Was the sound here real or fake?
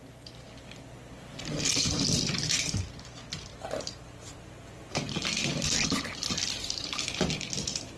real